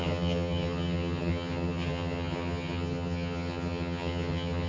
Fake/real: fake